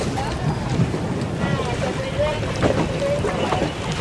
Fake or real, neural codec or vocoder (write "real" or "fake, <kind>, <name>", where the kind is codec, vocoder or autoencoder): real